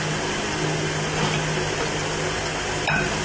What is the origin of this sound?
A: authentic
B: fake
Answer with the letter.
A